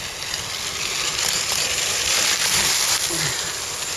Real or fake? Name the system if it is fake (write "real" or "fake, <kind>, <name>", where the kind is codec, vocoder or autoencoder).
fake, vocoder, BigVGAN v2